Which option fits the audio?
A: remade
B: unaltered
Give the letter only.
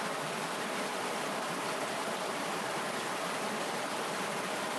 B